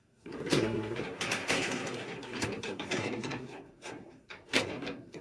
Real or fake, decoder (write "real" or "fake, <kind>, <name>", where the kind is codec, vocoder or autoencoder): fake, codec, SNAC